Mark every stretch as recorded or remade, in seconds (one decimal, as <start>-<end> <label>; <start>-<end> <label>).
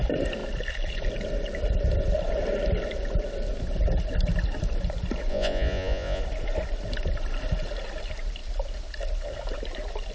0.0-5.3 recorded; 5.3-6.2 remade; 6.2-10.1 recorded